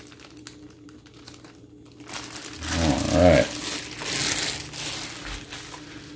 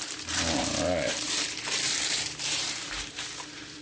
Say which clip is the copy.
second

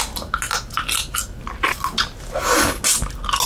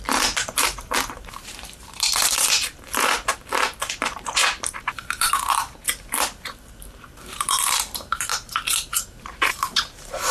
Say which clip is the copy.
second